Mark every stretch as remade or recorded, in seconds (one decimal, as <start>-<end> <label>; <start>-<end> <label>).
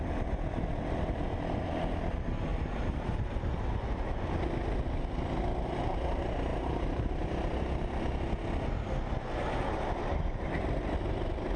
0.0-2.5 recorded; 2.5-3.5 remade; 3.5-6.5 recorded; 6.5-7.1 remade; 7.1-11.6 recorded